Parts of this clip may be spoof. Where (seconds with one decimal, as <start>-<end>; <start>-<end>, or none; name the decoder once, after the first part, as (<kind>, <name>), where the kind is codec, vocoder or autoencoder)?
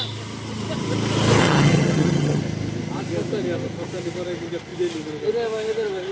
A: 1.4-2.4 (vocoder, HiFi-GAN)